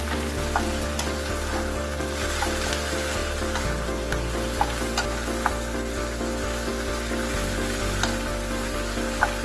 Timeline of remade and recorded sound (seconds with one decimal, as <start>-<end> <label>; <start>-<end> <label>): 0.0-9.4 recorded